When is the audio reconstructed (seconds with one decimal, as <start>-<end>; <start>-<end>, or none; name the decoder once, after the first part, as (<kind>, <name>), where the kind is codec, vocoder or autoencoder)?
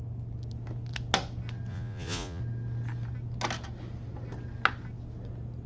1.7-2.4 (vocoder, Vocos)